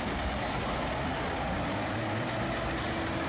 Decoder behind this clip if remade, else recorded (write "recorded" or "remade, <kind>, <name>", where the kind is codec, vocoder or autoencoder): recorded